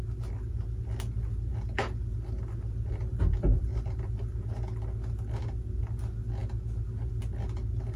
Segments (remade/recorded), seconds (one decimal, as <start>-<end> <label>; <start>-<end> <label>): 0.0-8.0 recorded